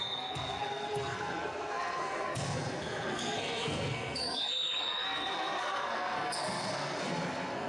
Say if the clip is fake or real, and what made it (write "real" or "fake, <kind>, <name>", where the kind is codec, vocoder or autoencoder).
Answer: fake, codec, SNAC